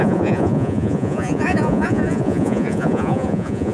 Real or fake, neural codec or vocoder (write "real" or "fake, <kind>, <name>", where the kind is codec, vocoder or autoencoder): fake, vocoder, Vocos